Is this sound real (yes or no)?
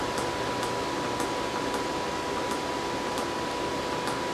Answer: yes